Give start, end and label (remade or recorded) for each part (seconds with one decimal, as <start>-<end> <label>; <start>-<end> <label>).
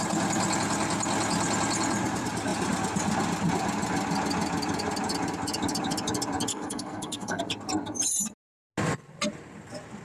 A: 0.0-6.5 recorded; 6.5-7.4 remade; 7.4-10.0 recorded